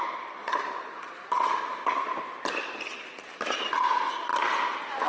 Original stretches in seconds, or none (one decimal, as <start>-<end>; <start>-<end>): 0.0-5.1

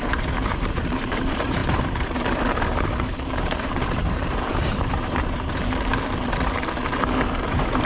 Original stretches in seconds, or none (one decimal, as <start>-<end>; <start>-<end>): 5.9-7.4

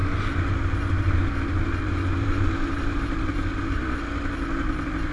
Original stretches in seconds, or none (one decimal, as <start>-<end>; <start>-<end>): 0.0-5.1

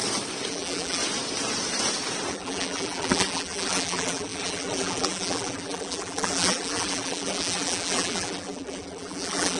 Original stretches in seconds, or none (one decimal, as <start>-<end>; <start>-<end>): 0.0-0.5; 1.0-2.3

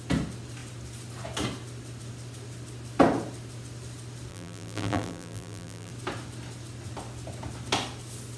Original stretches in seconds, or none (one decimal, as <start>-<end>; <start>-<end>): 0.0-4.3; 5.9-8.4